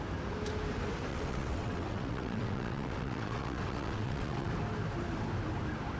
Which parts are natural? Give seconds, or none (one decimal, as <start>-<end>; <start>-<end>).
0.0-1.1; 4.5-6.0